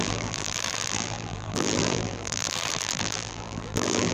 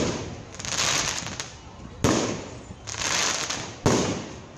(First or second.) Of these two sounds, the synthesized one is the first